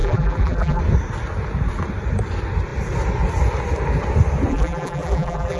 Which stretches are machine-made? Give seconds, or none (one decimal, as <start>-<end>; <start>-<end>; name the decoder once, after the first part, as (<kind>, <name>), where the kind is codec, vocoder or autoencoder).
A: 0.0-0.8 (vocoder, BigVGAN v2); 4.5-5.6